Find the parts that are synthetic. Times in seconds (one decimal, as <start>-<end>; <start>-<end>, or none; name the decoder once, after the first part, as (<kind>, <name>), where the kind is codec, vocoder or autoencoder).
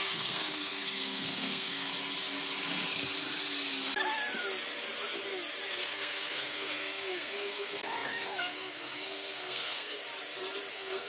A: 0.0-1.9 (codec, SNAC); 5.7-10.0; 10.7-11.1